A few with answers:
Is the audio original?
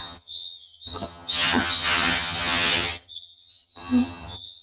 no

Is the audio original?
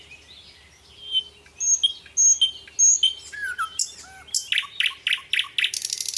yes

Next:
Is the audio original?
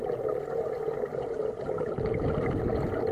yes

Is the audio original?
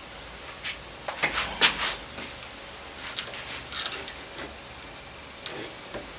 yes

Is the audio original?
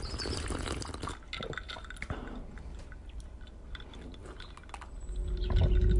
yes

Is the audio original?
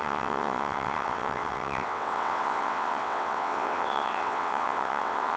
no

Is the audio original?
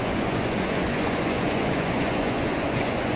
no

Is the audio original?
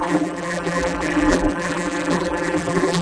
no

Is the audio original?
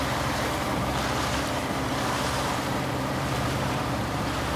no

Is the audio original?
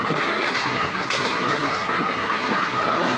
no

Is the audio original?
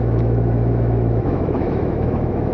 no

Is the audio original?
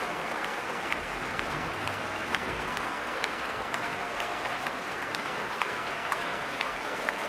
no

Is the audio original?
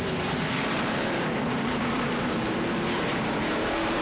no